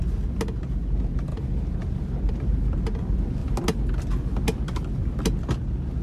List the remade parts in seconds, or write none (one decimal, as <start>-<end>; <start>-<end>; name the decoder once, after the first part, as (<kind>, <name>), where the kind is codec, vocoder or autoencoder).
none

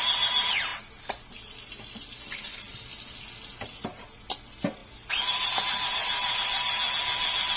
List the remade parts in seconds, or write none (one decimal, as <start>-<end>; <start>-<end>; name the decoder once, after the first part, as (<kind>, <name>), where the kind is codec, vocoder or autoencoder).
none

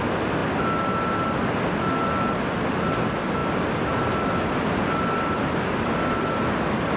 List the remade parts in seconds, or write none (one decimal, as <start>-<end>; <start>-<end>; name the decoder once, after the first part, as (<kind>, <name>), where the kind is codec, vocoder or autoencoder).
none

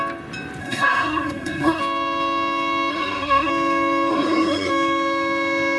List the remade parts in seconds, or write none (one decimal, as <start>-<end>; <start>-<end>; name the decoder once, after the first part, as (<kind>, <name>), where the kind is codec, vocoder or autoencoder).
0.6-1.8 (codec, SNAC); 2.9-3.5; 4.1-4.7